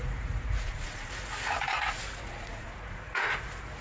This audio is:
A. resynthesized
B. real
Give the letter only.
A